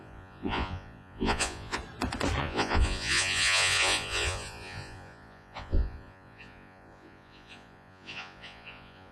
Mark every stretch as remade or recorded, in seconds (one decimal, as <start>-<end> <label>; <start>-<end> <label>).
0.0-1.8 remade; 1.8-2.4 recorded; 2.4-9.1 remade